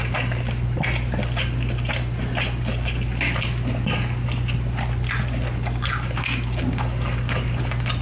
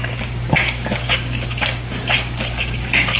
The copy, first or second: second